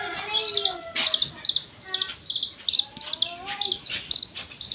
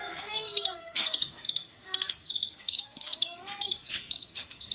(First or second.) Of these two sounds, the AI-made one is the second